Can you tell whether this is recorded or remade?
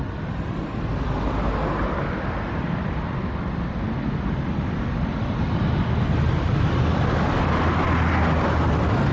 recorded